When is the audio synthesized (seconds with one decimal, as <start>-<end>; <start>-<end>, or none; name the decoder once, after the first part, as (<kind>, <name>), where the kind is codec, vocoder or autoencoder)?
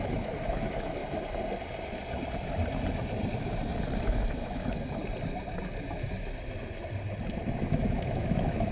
0.0-1.0 (autoencoder, DAC-VAE); 4.0-5.0; 7.6-8.7